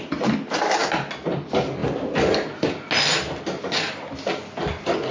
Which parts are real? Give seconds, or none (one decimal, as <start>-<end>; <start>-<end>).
0.0-5.1

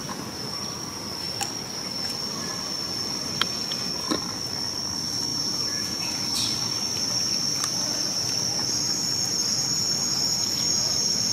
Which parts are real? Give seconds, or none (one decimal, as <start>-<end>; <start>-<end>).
0.0-5.3; 6.1-11.3

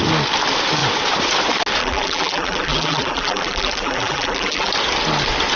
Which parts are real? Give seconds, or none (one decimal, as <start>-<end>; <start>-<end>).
0.0-1.8; 4.7-5.6

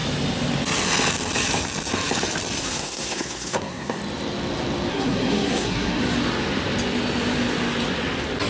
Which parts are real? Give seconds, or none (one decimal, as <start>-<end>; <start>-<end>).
0.0-2.6; 4.0-4.9; 6.0-8.5

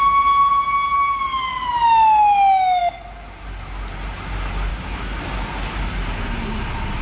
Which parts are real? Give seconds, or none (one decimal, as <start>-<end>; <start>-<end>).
0.0-4.7; 5.2-7.0

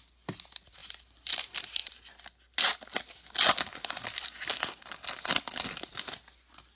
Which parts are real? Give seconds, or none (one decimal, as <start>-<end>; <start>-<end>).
0.0-6.8

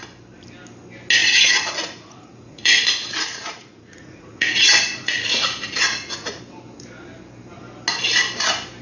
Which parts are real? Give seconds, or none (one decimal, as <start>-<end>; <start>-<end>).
0.0-1.2; 6.4-8.8

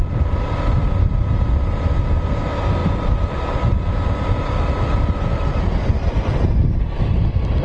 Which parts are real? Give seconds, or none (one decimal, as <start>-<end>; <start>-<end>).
0.0-7.6